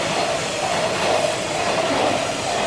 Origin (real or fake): real